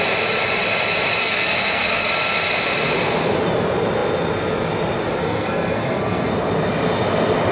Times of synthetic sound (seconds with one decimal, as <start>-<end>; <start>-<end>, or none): 1.2-2.1; 5.2-6.3